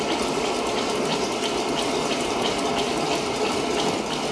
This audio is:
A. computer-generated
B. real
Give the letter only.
A